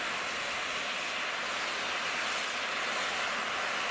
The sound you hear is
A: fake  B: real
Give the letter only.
B